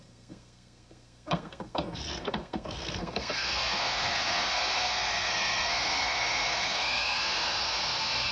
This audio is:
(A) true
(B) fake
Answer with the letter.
B